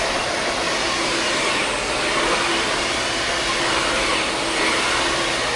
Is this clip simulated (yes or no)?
no